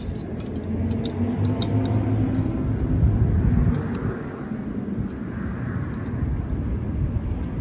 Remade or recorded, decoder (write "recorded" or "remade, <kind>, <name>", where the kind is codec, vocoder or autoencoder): recorded